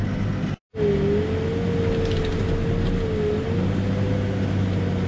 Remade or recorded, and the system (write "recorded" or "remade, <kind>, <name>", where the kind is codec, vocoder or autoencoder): recorded